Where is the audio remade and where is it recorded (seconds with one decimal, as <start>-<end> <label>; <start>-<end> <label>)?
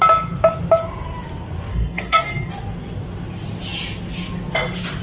0.0-1.7 recorded; 1.7-2.5 remade; 2.5-5.0 recorded